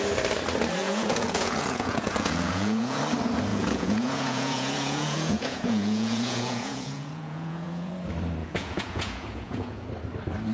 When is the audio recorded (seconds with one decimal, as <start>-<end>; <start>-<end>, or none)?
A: 0.0-0.8; 3.0-3.5; 7.9-8.4; 9.9-10.5

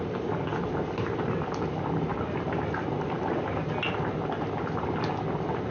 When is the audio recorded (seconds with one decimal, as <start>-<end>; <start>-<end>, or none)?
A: 0.0-5.7

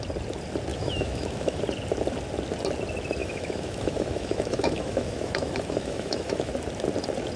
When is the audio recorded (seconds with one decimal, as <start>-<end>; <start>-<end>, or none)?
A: 0.0-0.7; 1.6-3.2; 6.5-7.4

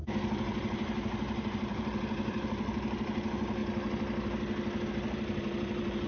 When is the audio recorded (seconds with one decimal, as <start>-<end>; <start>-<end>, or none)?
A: 3.6-4.9

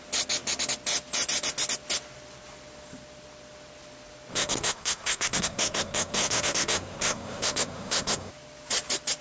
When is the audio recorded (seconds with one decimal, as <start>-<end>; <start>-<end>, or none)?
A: 0.0-4.3; 8.3-9.2

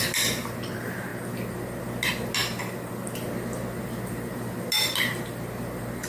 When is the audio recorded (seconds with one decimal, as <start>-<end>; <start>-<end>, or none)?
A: 0.0-6.1

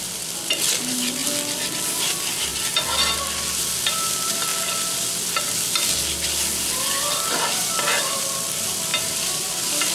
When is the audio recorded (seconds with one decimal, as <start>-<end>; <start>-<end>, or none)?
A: 1.2-2.0; 2.5-3.6; 4.5-6.8

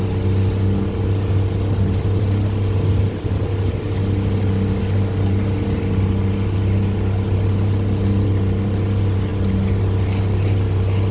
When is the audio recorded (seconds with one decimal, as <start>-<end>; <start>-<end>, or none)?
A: 0.0-11.1